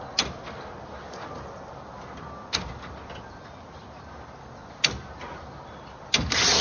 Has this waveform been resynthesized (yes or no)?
no